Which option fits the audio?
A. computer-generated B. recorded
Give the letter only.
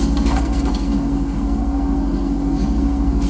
A